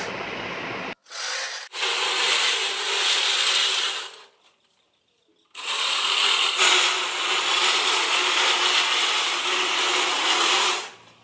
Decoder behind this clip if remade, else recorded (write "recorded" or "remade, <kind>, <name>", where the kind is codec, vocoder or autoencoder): recorded